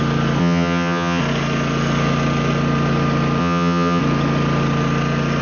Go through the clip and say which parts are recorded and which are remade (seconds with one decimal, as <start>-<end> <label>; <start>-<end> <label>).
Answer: 0.0-0.4 recorded; 0.4-1.2 remade; 1.2-3.4 recorded; 3.4-4.0 remade; 4.0-5.4 recorded